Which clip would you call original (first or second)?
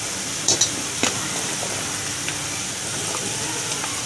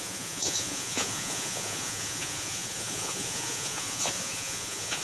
first